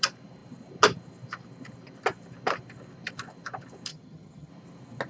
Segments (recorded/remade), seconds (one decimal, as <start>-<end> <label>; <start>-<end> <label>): 0.0-3.9 recorded; 3.9-4.5 remade; 4.5-5.1 recorded